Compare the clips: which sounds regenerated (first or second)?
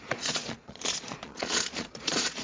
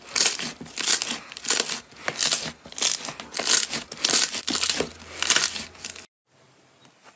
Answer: first